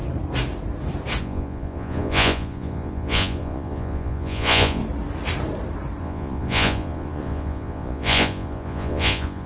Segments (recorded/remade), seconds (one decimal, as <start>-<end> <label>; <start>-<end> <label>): 0.0-1.2 recorded; 1.2-4.8 remade; 4.8-6.0 recorded; 6.0-9.5 remade